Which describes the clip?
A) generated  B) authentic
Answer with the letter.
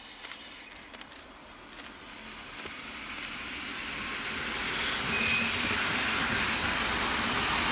B